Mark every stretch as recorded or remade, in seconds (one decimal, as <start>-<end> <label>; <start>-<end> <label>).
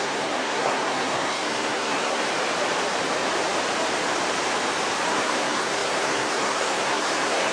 0.0-2.3 remade; 2.3-5.1 recorded; 5.1-7.5 remade